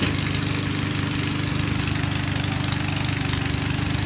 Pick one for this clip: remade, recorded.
recorded